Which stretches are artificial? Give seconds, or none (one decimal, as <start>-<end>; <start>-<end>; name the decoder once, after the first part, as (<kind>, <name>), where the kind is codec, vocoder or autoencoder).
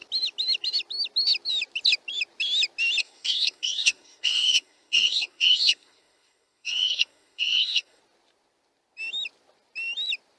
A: 3.0-8.0 (codec, SNAC)